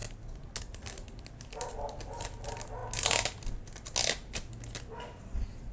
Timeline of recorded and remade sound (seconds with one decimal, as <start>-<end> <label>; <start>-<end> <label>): 0.0-5.7 recorded